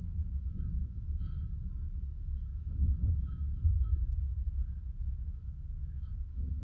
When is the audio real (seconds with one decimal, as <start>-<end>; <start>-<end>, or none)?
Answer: 0.8-2.2